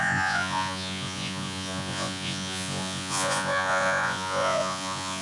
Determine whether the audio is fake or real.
fake